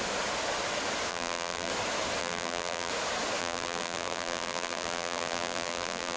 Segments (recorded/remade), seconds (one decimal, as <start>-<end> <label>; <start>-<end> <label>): 0.0-1.1 recorded; 1.1-1.7 remade; 1.7-2.2 recorded; 2.2-2.9 remade; 2.9-3.4 recorded; 3.4-6.2 remade